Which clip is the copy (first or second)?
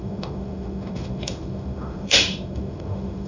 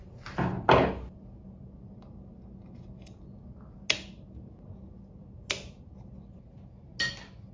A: first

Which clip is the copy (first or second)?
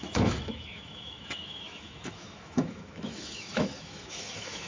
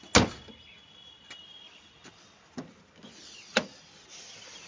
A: first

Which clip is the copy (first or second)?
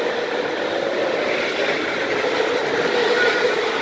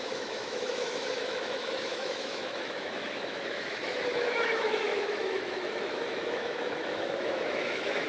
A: second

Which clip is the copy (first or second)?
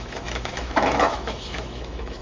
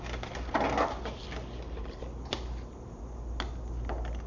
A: first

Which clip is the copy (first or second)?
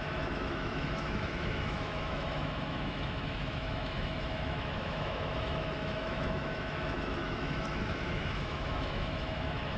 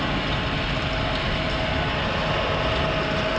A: first